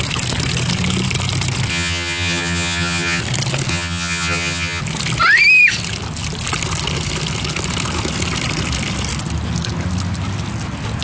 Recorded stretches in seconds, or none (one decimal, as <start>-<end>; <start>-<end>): 0.0-1.7; 3.2-3.7; 4.8-11.0